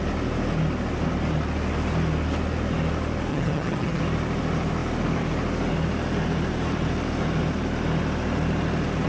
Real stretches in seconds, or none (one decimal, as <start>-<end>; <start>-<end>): 0.0-3.3; 4.0-9.1